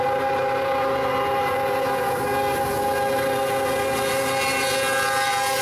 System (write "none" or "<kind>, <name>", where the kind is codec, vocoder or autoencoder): none